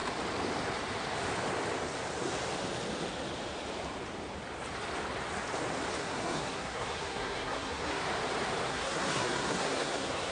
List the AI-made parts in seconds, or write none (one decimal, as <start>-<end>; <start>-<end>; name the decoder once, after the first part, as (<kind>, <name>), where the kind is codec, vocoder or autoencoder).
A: 6.0-8.0 (codec, SNAC); 8.7-10.3